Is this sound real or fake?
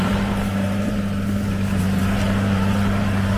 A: fake